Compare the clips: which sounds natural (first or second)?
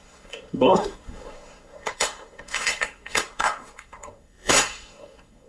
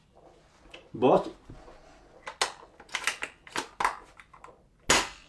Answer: second